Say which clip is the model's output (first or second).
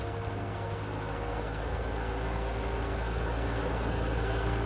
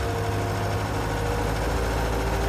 first